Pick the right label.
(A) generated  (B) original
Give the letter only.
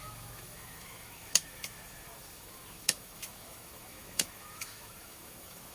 A